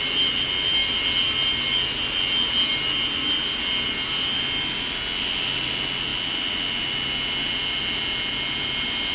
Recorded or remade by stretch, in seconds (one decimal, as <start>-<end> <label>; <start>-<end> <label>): 0.0-9.1 recorded